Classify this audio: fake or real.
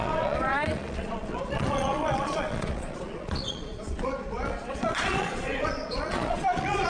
fake